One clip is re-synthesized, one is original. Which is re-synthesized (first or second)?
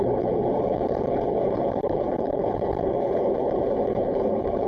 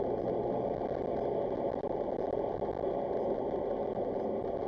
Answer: first